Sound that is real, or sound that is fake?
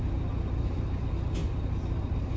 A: real